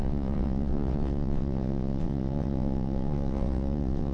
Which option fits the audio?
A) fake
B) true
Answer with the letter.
A